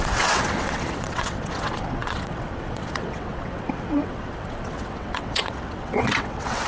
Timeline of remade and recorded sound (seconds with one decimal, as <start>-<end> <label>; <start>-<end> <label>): 0.0-6.7 remade